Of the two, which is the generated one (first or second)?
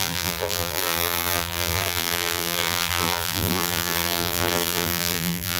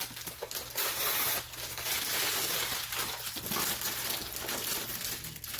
first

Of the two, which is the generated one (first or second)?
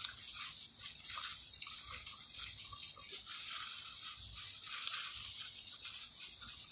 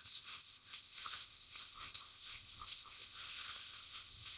second